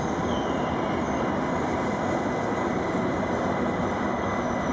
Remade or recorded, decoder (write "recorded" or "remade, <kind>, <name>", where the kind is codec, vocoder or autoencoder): recorded